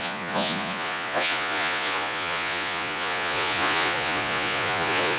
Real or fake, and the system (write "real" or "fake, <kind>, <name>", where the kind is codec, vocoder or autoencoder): fake, vocoder, Vocos